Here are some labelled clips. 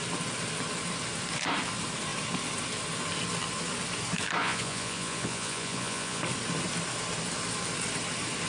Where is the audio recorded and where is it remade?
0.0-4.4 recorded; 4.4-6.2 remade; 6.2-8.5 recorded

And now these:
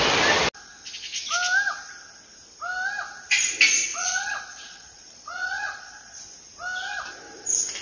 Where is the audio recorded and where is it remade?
0.0-3.9 recorded; 3.9-6.2 remade; 6.2-7.8 recorded

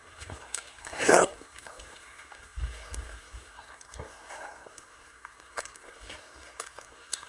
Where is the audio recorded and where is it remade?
0.0-7.3 remade

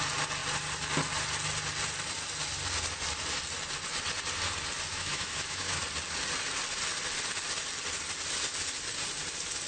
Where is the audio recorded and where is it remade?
0.0-4.9 recorded; 4.9-5.8 remade; 5.8-9.7 recorded